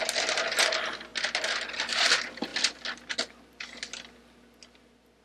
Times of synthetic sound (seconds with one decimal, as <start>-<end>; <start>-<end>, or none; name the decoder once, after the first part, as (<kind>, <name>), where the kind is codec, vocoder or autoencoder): none